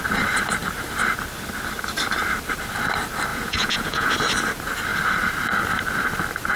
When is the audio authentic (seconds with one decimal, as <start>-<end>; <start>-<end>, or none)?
0.0-3.3; 4.1-6.6